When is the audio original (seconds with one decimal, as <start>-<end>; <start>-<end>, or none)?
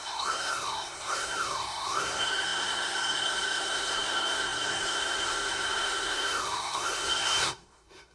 none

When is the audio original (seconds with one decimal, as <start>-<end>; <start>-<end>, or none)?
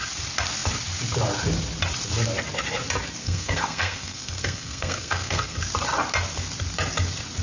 0.0-3.2; 5.6-7.4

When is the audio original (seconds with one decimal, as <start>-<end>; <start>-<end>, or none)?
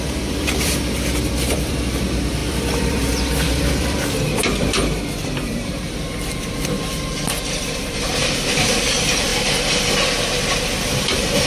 9.3-11.0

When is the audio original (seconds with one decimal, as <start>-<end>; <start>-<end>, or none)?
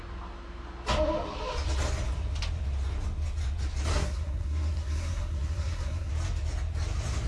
0.0-3.9; 6.1-7.3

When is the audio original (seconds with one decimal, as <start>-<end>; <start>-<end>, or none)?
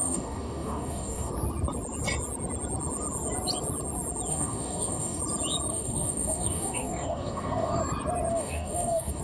1.3-4.3; 5.2-5.7; 7.8-8.3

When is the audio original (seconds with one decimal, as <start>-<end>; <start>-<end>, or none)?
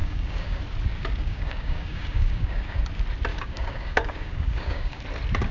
0.6-1.2; 2.8-3.3; 5.0-5.5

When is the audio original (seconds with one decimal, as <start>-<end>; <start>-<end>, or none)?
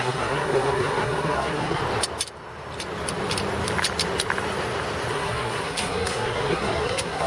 1.8-5.1